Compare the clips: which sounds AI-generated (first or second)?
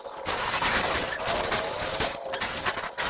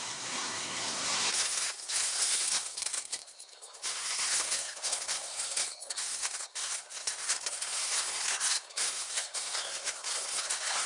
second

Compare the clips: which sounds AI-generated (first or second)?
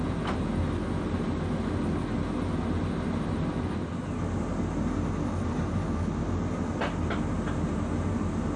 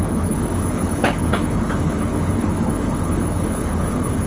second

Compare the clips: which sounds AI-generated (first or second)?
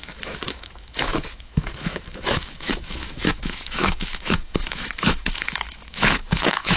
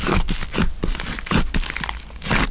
first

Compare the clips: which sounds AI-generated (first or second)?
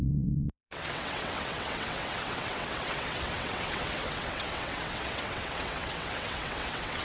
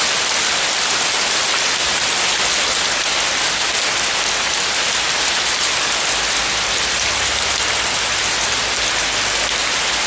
first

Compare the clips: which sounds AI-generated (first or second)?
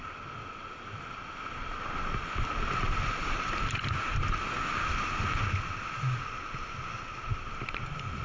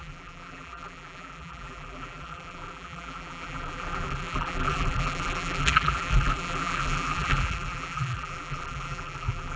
second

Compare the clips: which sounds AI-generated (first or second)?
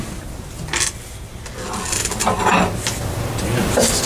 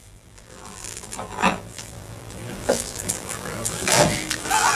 second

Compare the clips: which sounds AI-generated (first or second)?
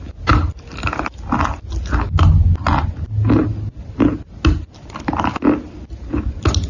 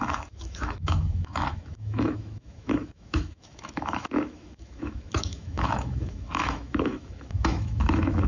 second